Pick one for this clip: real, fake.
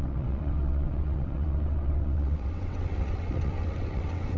fake